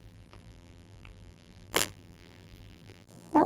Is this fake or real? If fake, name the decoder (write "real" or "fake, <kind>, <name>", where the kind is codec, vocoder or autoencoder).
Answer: fake, vocoder, BigVGAN v2